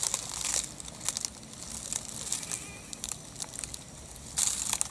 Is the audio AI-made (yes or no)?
no